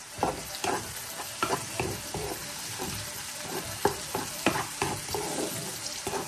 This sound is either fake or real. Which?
fake